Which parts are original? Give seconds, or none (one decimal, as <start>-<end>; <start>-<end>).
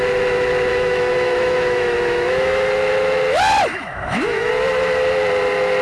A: 0.0-0.7; 2.7-3.7; 4.5-5.8